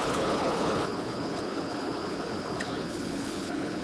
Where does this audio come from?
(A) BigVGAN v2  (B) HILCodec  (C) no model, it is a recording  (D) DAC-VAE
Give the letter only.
B